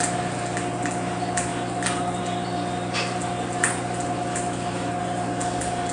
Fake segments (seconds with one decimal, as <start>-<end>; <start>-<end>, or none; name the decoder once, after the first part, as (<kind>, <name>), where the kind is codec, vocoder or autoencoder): 4.3-4.9 (autoencoder, DAC-VAE)